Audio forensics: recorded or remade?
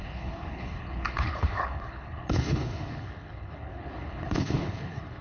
remade